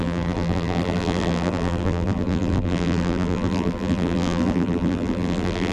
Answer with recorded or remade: remade